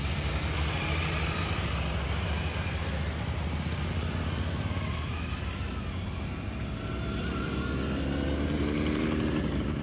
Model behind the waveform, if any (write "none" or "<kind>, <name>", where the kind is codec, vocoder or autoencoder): none